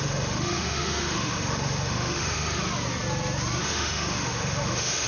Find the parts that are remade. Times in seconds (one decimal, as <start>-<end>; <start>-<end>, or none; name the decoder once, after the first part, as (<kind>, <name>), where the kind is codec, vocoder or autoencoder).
0.0-2.6 (autoencoder, DAC-VAE); 3.6-5.1